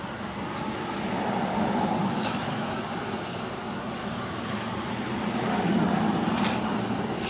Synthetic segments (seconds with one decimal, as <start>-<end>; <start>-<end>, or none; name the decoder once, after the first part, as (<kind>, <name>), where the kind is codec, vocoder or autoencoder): 2.0-2.8 (autoencoder, DAC-VAE); 4.0-4.7